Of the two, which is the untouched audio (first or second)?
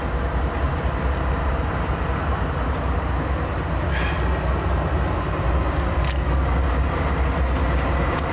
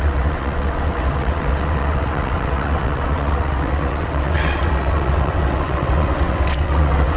first